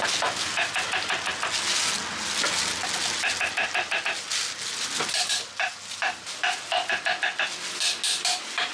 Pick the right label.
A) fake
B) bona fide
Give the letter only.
B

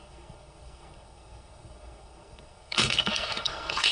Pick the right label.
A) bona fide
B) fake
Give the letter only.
B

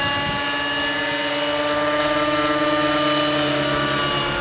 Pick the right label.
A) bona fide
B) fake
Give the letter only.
A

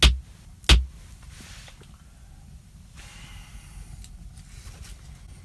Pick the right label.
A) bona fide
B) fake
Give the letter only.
A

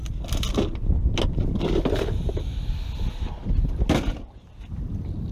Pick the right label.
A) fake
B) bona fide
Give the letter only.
B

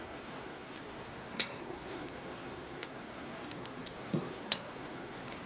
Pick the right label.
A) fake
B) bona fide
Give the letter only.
A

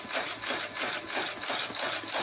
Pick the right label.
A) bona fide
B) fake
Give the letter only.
A